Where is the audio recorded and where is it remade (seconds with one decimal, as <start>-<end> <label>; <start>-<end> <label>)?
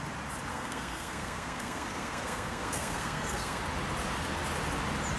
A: 0.0-0.5 recorded; 0.5-3.6 remade; 3.6-5.2 recorded